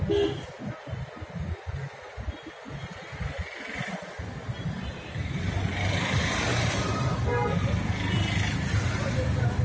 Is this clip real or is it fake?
real